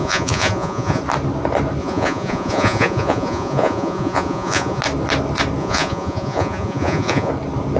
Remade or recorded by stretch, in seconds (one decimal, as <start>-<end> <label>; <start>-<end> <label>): 0.0-1.0 remade; 1.0-1.8 recorded; 1.8-4.8 remade; 4.8-5.6 recorded; 5.6-7.3 remade; 7.3-7.8 recorded